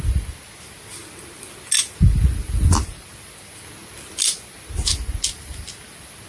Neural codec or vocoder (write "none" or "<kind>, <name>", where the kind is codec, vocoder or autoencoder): none